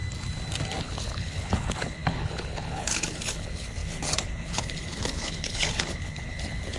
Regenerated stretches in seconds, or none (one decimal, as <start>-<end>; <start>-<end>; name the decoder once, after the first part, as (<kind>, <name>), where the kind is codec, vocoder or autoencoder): 0.8-6.8 (codec, HILCodec)